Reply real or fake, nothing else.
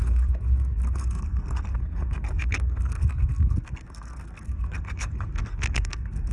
fake